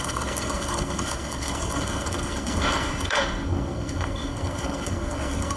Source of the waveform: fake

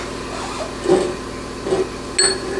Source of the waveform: real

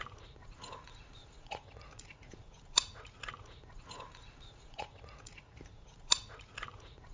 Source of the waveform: fake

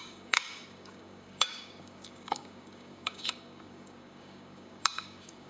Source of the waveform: fake